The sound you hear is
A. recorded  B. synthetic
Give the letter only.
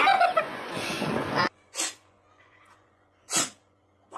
B